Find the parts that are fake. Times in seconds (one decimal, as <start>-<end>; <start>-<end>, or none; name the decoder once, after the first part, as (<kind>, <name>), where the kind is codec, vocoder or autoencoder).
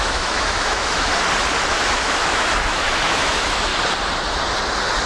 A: 0.0-1.1 (autoencoder, DAC-VAE); 1.7-3.7